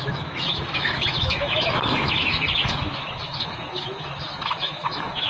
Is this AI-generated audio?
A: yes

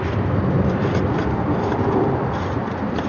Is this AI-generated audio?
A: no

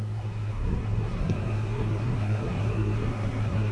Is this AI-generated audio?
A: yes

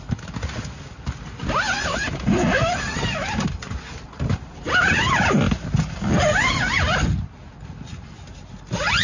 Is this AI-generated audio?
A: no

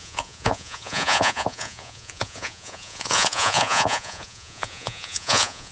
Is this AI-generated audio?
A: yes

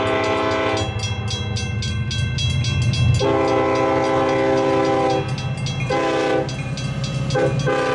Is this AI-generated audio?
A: no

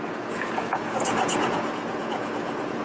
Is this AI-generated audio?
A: yes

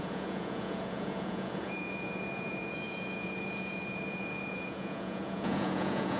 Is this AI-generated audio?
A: yes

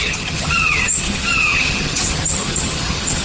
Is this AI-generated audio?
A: yes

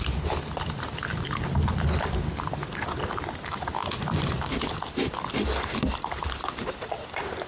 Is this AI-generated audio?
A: no